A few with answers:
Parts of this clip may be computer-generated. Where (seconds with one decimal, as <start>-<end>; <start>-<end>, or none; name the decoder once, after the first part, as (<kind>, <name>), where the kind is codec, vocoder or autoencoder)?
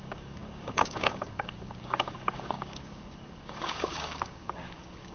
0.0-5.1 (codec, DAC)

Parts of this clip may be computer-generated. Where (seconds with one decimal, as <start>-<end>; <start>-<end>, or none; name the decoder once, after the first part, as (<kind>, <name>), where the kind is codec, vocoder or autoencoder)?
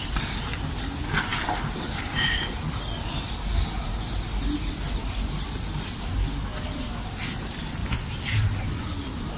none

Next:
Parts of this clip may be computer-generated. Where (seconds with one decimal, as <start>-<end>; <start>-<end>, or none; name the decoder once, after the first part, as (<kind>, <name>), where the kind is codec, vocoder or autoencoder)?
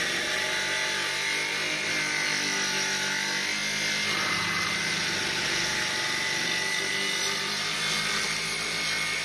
none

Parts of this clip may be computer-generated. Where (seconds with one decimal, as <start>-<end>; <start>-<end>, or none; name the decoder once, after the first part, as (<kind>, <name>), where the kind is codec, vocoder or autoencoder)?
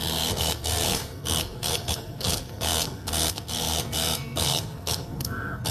0.0-5.7 (codec, SNAC)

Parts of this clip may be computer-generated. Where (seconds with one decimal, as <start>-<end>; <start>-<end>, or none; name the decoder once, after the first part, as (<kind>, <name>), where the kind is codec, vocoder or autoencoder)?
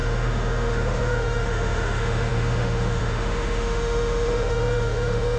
0.0-5.4 (autoencoder, DAC-VAE)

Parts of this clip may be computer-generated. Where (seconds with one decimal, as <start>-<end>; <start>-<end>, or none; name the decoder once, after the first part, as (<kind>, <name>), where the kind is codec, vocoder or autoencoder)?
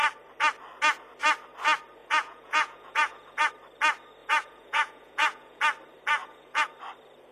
2.0-3.5 (vocoder, Vocos); 4.2-5.6; 6.2-6.7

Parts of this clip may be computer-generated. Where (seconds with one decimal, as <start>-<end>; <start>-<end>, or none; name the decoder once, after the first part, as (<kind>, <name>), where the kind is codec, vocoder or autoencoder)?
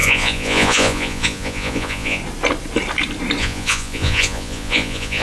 0.0-2.2 (vocoder, Vocos); 3.4-5.2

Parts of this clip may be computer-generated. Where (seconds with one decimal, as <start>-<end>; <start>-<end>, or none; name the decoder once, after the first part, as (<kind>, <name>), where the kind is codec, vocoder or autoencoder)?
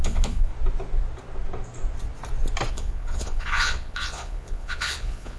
0.0-0.5 (vocoder, Vocos); 2.7-5.4